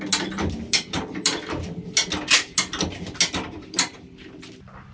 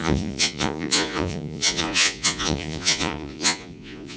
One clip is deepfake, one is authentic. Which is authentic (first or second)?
first